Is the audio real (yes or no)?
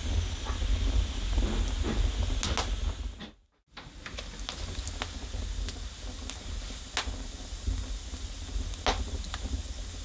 yes